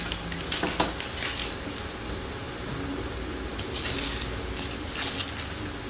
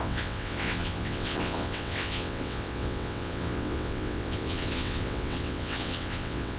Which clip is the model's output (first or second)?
second